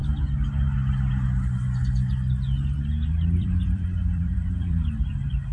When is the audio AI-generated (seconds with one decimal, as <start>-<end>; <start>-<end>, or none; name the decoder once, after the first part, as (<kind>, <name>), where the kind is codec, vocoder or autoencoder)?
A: 3.1-5.5 (vocoder, BigVGAN v2)